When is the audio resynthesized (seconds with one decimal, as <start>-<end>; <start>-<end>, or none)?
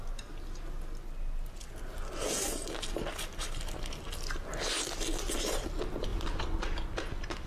none